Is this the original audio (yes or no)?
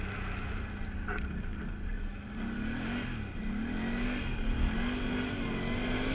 yes